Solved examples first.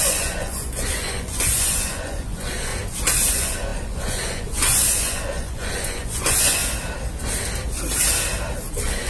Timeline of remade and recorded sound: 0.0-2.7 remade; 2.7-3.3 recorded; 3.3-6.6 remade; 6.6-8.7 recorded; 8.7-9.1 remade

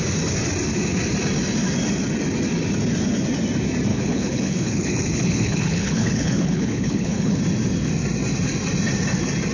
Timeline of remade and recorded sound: 0.0-3.9 recorded; 3.9-7.4 remade; 7.4-9.5 recorded